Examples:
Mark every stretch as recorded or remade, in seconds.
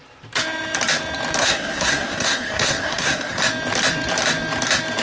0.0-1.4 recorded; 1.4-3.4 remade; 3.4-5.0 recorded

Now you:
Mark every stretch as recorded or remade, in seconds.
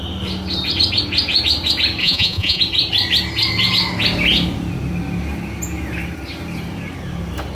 0.0-2.0 recorded; 2.0-2.6 remade; 2.6-7.5 recorded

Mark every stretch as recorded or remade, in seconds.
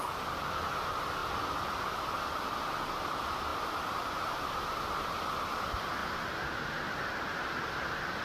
0.0-3.5 recorded; 3.5-4.4 remade; 4.4-6.0 recorded; 6.0-6.7 remade; 6.7-8.2 recorded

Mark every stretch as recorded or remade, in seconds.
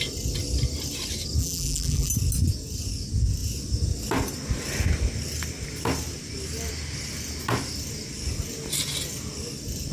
0.0-1.4 recorded; 1.4-2.1 remade; 2.1-9.9 recorded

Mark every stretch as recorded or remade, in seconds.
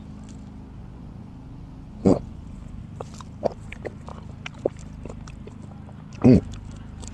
0.0-0.8 recorded; 0.8-2.8 remade; 2.8-7.1 recorded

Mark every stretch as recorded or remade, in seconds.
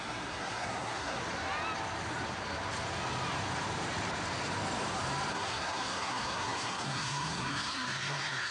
0.0-1.2 remade; 1.2-5.3 recorded; 5.3-8.5 remade